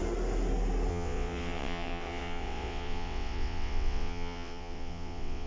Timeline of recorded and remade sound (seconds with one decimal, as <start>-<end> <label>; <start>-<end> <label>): 0.0-0.9 recorded; 0.9-5.5 remade